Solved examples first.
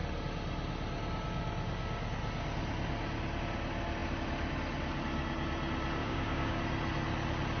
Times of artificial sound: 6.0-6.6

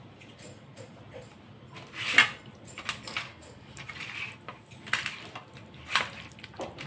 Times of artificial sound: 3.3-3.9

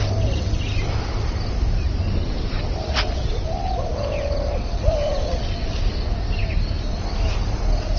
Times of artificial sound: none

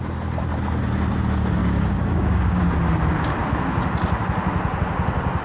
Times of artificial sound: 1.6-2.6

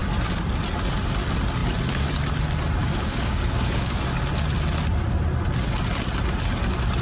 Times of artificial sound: 2.8-4.0